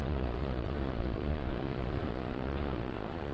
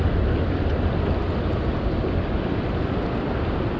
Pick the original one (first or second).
second